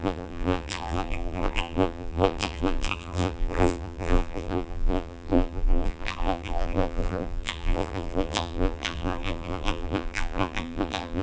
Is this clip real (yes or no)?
no